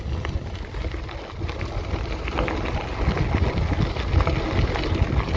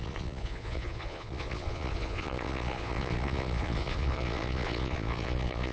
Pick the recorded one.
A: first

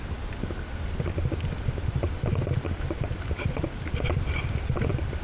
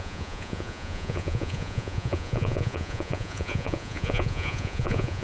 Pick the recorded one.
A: first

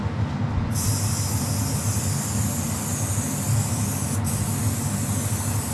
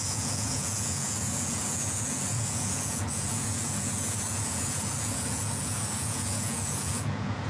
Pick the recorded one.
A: first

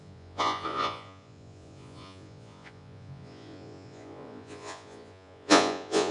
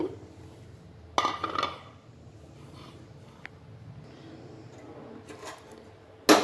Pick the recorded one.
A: second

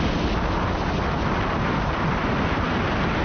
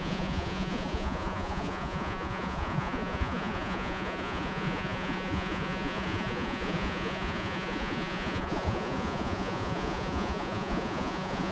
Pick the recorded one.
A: first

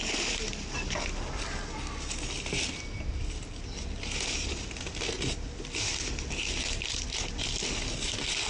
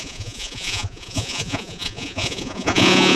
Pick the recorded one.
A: first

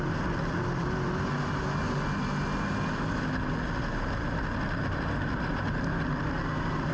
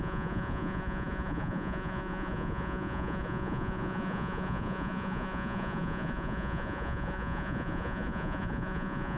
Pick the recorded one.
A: first